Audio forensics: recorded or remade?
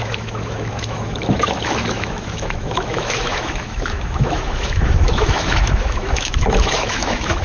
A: remade